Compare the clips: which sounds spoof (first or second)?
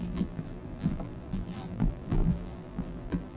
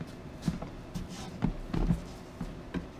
first